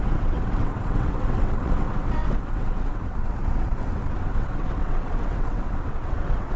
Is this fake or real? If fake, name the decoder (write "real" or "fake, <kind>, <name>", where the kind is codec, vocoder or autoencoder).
fake, vocoder, WaveNeXt